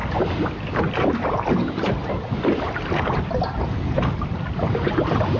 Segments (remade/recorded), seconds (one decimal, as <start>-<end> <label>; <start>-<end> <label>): 0.0-5.4 recorded